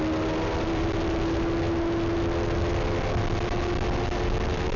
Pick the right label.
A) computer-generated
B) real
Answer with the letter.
B